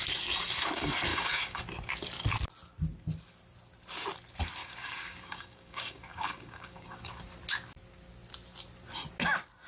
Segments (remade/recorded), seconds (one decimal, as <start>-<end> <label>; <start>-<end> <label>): 0.0-1.1 recorded; 1.1-1.6 remade; 1.6-4.6 recorded; 4.6-7.0 remade; 7.0-9.7 recorded